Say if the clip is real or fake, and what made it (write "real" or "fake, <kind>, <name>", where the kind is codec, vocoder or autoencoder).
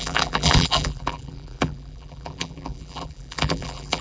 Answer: fake, vocoder, BigVGAN v2